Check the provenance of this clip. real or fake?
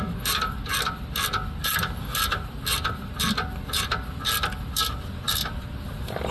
real